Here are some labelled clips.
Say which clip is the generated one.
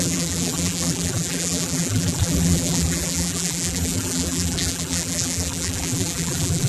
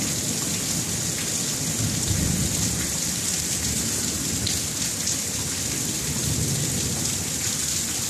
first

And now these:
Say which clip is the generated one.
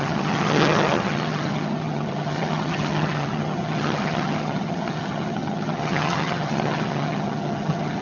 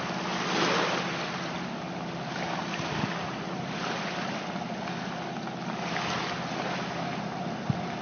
first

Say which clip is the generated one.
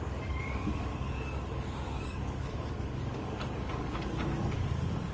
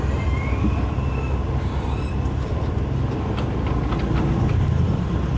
first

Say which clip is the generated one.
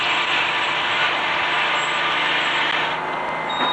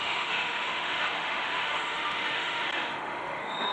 second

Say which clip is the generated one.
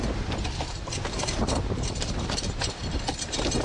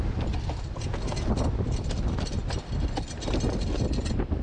first